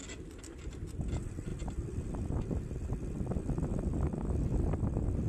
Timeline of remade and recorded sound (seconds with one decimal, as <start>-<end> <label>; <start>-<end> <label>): 0.0-5.3 recorded